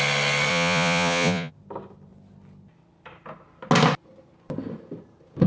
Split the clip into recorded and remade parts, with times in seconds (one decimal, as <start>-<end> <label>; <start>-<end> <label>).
0.0-0.5 recorded; 0.5-1.5 remade; 1.5-5.5 recorded